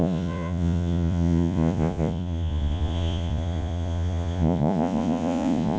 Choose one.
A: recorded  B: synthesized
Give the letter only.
B